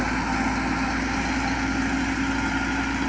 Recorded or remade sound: recorded